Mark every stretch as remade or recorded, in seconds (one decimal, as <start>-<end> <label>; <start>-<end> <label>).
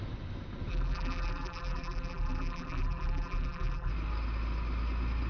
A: 0.0-0.7 recorded; 0.7-3.9 remade; 3.9-5.3 recorded